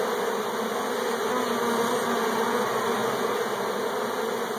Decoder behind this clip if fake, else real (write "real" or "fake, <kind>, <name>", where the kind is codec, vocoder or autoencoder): real